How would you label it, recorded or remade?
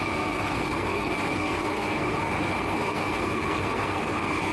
remade